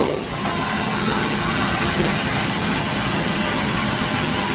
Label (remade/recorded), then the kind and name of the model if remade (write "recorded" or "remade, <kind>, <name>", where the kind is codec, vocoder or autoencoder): remade, vocoder, HiFi-GAN